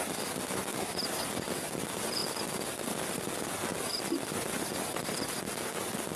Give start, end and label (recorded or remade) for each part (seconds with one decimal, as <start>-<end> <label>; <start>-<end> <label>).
0.0-6.2 recorded